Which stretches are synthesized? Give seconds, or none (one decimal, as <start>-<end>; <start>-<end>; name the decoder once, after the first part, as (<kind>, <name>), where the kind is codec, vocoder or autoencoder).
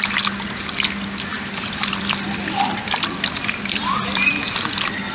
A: 1.3-4.4 (vocoder, BigVGAN v2)